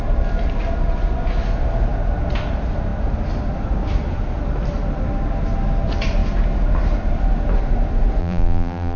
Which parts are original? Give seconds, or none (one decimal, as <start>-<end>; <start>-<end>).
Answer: 0.0-8.2

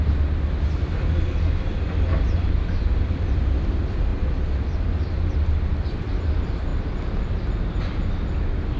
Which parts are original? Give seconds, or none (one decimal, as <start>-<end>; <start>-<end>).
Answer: 0.0-8.8

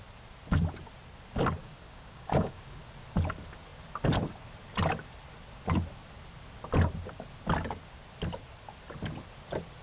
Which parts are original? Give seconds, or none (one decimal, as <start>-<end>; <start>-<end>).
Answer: 0.0-1.6; 2.8-9.8

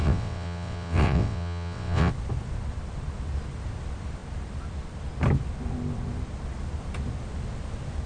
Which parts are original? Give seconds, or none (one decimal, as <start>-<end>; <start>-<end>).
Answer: 2.1-8.1

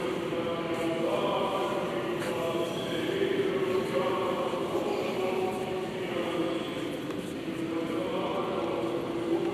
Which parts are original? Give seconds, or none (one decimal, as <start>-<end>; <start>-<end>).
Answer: 0.0-9.5

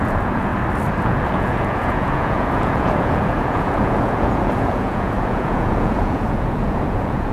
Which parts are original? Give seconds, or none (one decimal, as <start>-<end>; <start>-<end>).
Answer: 0.5-1.1

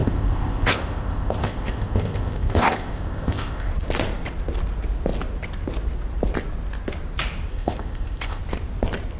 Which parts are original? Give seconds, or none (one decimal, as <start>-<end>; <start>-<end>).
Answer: 3.7-7.5; 8.4-9.2